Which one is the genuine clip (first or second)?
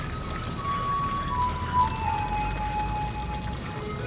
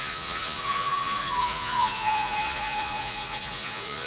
first